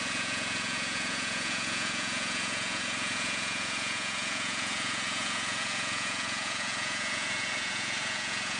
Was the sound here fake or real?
fake